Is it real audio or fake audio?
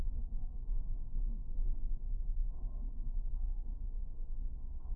fake